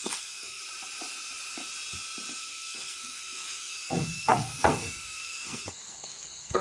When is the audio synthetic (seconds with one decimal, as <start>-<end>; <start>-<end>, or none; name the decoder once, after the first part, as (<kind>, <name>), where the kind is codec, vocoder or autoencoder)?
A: 0.0-0.6 (codec, SNAC); 2.4-6.6